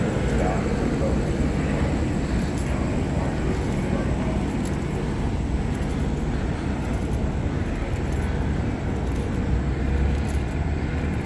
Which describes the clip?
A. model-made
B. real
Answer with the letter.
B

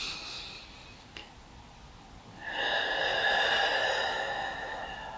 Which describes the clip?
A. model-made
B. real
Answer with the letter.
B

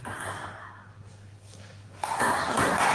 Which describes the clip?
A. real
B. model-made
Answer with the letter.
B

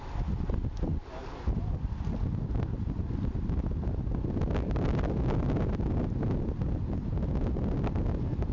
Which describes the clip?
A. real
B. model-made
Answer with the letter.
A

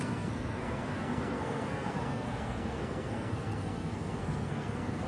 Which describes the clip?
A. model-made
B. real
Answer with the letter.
A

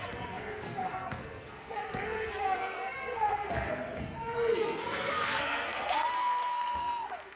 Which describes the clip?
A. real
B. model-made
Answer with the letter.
B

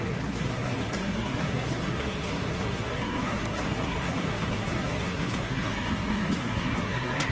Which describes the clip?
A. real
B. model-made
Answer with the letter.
B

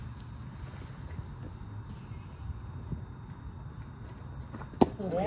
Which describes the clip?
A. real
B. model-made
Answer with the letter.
A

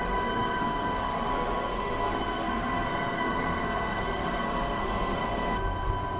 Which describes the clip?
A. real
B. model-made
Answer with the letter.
B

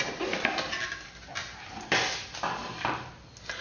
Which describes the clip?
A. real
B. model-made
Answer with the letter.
A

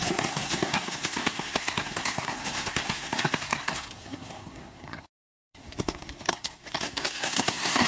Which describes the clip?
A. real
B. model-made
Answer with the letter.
B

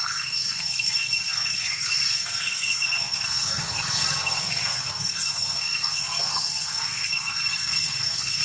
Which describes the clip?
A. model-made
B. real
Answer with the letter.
A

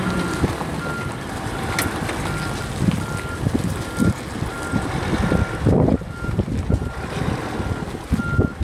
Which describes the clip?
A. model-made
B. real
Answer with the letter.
B